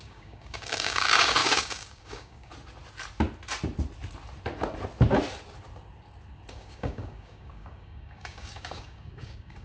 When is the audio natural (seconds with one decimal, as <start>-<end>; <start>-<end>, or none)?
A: 2.5-6.5